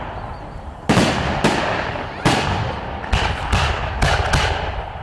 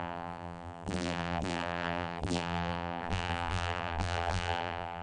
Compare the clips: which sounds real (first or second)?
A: first